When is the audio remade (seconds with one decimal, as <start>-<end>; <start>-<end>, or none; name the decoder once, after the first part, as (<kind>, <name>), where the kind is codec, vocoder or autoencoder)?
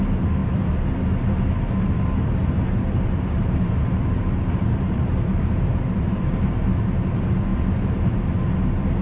2.4-6.6 (vocoder, BigVGAN v2); 7.5-8.2